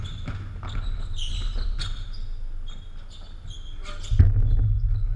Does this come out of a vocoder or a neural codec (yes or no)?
no